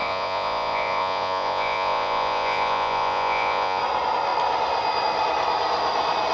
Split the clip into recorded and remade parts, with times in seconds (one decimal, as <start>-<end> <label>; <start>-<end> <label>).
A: 0.0-3.8 remade; 3.8-6.3 recorded